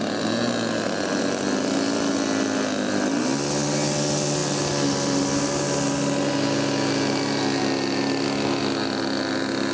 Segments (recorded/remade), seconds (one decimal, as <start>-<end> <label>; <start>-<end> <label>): 0.0-9.7 recorded